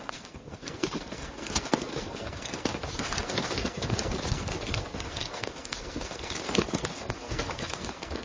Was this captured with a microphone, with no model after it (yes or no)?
no